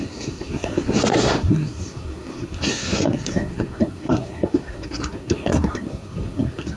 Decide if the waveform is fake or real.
fake